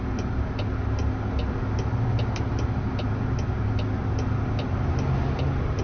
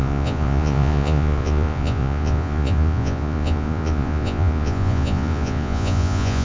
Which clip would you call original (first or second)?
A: first